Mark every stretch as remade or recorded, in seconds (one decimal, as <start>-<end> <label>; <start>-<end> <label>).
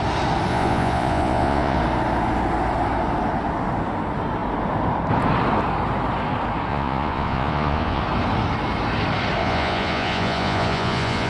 0.0-0.5 recorded; 0.5-1.8 remade; 1.8-6.7 recorded; 6.7-8.0 remade; 8.0-9.4 recorded; 9.4-11.3 remade